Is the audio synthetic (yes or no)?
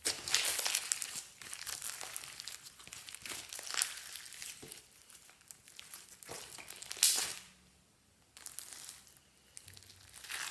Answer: no